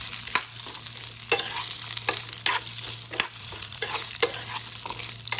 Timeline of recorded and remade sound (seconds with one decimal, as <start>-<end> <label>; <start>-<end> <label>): 0.0-3.4 recorded; 3.4-4.1 remade; 4.1-5.4 recorded